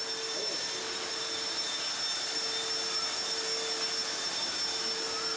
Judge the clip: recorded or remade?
recorded